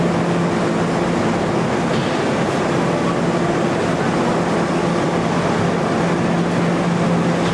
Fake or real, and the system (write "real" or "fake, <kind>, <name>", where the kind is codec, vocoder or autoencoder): real